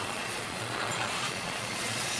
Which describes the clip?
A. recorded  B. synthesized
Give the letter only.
B